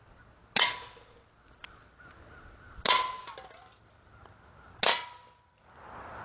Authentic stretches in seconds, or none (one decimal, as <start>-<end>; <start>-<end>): 0.0-6.2